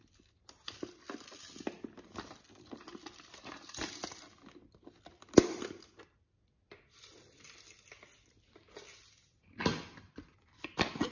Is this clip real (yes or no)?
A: yes